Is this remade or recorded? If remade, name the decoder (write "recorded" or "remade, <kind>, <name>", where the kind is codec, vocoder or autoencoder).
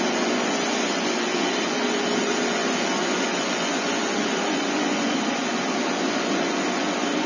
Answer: remade, vocoder, Vocos